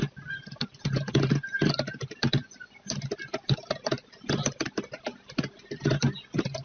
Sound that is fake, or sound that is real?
real